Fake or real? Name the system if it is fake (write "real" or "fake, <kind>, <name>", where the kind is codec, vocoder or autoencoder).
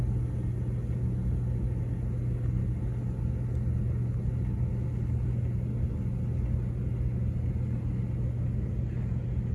real